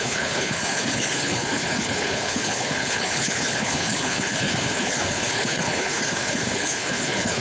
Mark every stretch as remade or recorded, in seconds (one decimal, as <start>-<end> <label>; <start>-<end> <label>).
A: 0.0-7.4 remade